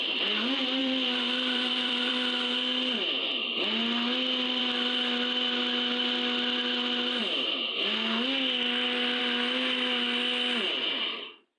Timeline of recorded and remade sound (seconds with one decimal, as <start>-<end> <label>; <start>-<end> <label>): 0.0-0.8 recorded; 0.8-2.1 remade; 2.1-11.6 recorded